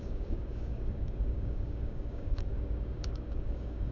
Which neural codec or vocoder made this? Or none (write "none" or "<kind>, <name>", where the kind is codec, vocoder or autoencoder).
codec, DAC